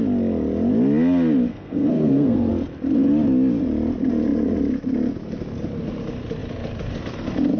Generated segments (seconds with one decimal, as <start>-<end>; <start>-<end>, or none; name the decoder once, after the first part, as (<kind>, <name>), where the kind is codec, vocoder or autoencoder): 1.5-2.5 (codec, SNAC)